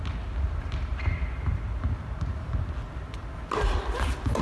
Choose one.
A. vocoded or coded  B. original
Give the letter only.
B